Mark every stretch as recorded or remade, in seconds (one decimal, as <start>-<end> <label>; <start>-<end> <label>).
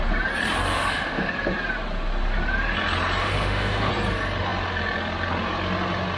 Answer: 0.0-0.7 recorded; 0.7-1.3 remade; 1.3-3.2 recorded; 3.2-3.9 remade; 3.9-6.2 recorded